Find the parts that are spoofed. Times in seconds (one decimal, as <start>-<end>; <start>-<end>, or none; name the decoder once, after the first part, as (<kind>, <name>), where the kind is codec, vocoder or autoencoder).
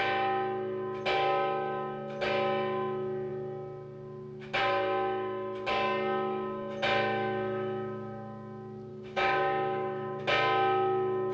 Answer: 8.9-10.2 (codec, DAC)